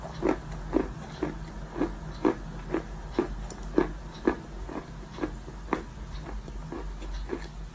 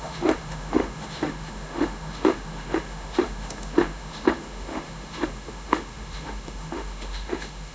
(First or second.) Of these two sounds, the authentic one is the first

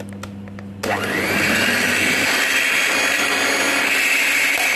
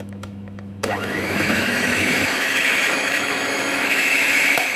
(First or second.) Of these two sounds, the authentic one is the first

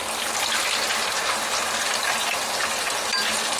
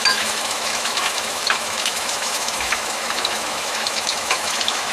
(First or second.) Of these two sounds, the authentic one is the first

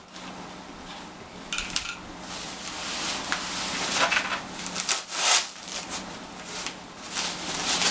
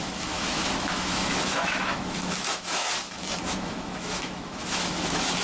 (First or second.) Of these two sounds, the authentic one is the first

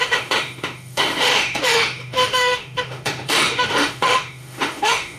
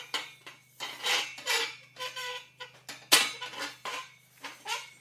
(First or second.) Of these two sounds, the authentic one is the second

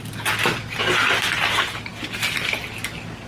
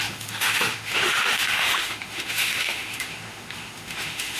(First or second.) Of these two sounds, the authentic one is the first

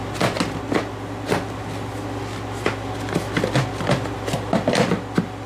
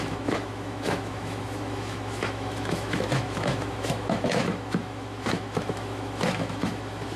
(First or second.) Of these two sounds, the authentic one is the first